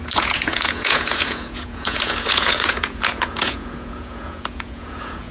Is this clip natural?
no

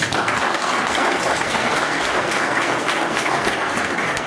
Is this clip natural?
no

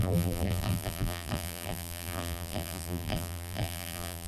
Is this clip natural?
no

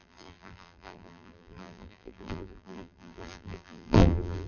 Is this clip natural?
no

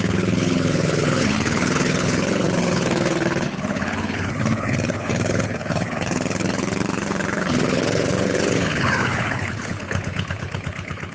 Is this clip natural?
no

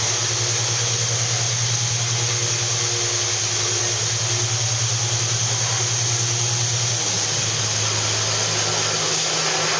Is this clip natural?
yes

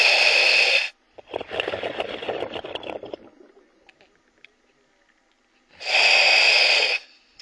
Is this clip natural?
yes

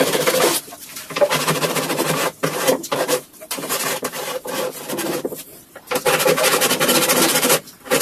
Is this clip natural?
no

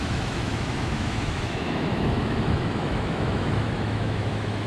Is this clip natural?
no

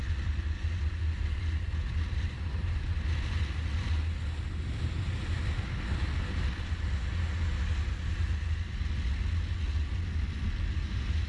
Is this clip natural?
yes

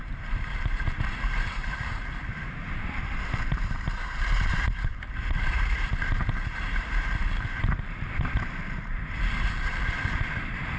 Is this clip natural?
no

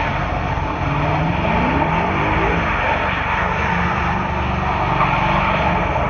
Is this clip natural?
yes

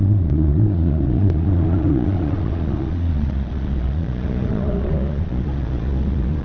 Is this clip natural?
no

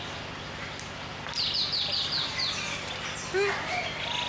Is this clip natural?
yes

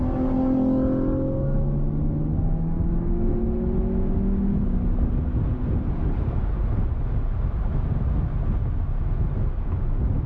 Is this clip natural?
yes